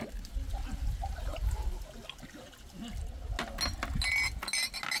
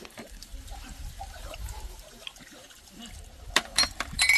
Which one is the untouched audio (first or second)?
first